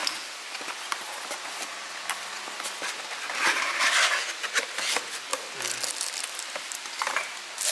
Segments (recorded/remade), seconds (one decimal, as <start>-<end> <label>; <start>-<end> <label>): 0.0-5.3 remade; 5.3-5.9 recorded; 5.9-7.7 remade